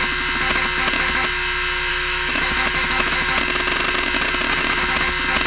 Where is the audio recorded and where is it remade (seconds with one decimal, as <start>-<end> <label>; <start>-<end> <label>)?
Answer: 0.0-1.9 recorded; 1.9-3.3 remade; 3.3-5.5 recorded

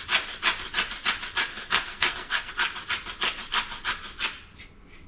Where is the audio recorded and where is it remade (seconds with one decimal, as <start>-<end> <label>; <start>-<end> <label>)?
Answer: 0.0-1.5 recorded; 1.5-2.5 remade; 2.5-5.1 recorded

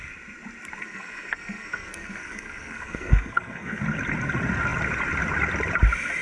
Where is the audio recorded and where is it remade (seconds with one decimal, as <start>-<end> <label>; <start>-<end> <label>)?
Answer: 0.0-0.8 recorded; 0.8-3.8 remade; 3.8-6.2 recorded

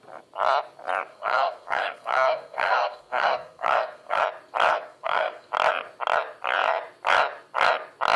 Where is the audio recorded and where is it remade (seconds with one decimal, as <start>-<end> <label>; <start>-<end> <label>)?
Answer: 0.0-1.1 recorded; 1.1-4.2 remade; 4.2-4.7 recorded; 4.7-5.5 remade; 5.5-8.2 recorded

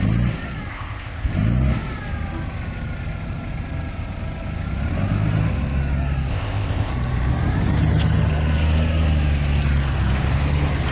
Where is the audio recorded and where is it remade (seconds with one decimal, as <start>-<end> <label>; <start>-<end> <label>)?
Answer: 0.0-0.7 recorded; 0.7-1.3 remade; 1.3-6.3 recorded; 6.3-6.9 remade; 6.9-10.9 recorded

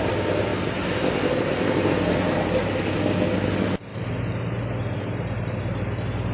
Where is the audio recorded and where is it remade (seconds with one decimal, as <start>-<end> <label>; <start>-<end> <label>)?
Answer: 0.0-6.3 recorded

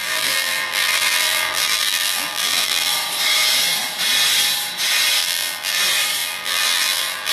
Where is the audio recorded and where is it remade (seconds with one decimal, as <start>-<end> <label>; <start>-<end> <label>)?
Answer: 0.0-2.9 remade; 2.9-5.2 recorded; 5.2-5.8 remade; 5.8-6.2 recorded; 6.2-7.3 remade

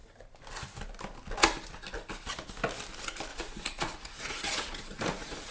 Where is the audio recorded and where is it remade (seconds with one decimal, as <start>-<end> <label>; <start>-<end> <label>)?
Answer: 0.0-3.3 recorded; 3.3-5.5 remade